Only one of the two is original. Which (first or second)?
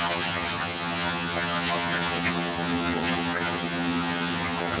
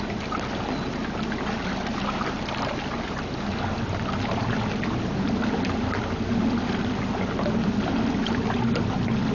second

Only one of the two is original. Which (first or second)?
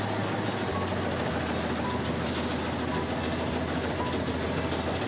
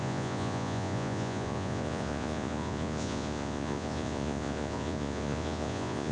first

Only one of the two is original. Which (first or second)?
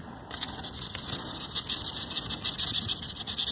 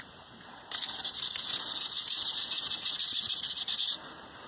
first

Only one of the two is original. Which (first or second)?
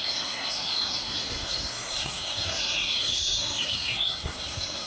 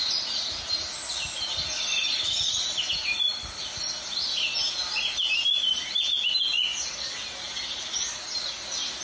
second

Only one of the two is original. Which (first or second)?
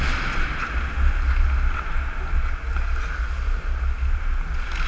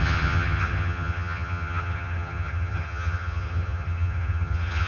first